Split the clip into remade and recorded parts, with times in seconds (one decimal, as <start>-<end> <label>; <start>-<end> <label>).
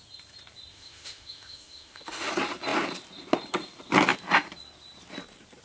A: 0.0-0.7 recorded; 0.7-2.3 remade; 2.3-5.6 recorded